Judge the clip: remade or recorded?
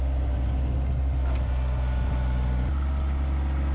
recorded